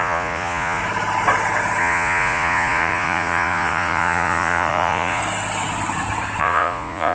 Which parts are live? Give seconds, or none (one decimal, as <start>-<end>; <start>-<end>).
0.8-1.8; 5.2-6.4